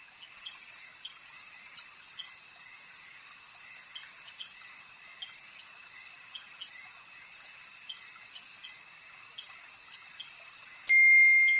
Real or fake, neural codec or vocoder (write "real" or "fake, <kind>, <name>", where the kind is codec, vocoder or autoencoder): real